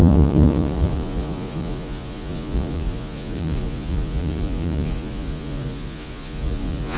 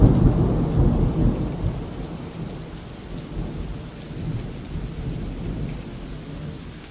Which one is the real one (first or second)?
second